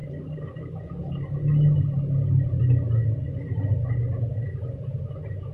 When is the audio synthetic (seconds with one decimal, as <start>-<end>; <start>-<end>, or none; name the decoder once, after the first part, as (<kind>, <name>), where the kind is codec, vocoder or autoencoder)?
none